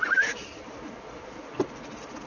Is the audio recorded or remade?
recorded